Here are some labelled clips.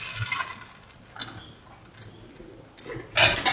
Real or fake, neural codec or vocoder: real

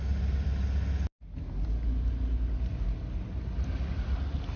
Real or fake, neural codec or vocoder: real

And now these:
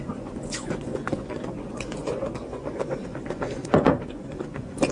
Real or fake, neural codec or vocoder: fake, vocoder, Vocos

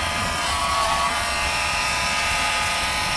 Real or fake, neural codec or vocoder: fake, vocoder, Vocos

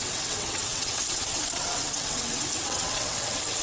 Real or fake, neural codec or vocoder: fake, vocoder, WaveNeXt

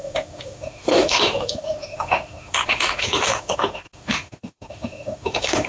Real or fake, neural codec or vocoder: fake, autoencoder, DAC-VAE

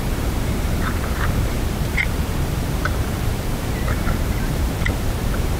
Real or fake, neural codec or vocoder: fake, vocoder, BigVGAN v2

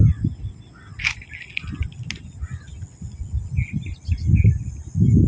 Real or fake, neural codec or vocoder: real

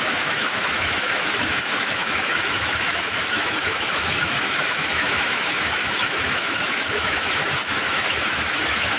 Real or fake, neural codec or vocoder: fake, autoencoder, DAC-VAE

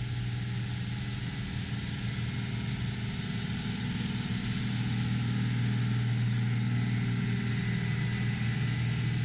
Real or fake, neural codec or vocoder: real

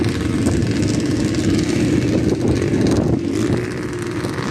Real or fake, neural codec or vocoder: real